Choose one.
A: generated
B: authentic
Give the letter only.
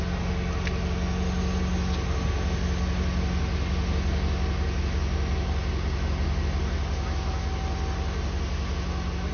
B